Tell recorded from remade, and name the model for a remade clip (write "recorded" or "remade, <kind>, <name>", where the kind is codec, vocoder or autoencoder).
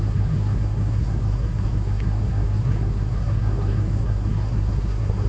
remade, codec, SNAC